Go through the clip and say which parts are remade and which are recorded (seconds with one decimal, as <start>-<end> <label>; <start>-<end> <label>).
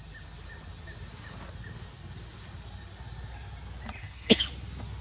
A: 0.0-4.0 recorded; 4.0-4.5 remade; 4.5-5.0 recorded